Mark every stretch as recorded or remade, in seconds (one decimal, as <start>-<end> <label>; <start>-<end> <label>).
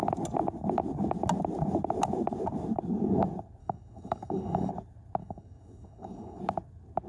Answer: 0.0-3.6 recorded; 3.6-4.7 remade; 4.7-5.2 recorded; 5.2-6.4 remade; 6.4-7.1 recorded